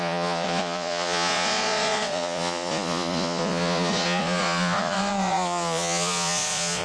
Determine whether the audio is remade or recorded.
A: remade